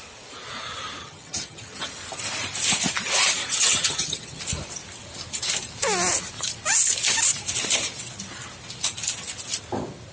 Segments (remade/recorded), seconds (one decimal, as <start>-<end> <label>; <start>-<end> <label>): 0.0-1.0 recorded; 1.0-1.9 remade; 1.9-3.4 recorded; 3.4-4.4 remade; 4.4-10.1 recorded